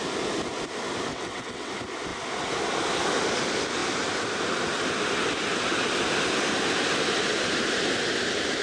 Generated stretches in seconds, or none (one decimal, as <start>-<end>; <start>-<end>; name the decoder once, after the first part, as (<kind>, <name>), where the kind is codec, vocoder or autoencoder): 1.1-1.7 (vocoder, WaveNeXt)